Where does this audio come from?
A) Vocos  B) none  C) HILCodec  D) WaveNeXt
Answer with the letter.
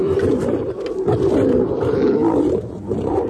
B